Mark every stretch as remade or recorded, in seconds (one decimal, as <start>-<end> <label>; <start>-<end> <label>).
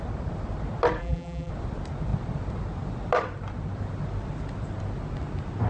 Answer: 0.0-1.0 recorded; 1.0-1.5 remade; 1.5-5.7 recorded